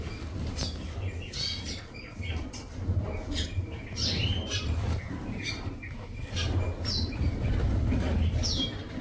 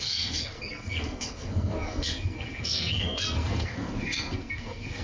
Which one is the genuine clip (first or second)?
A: first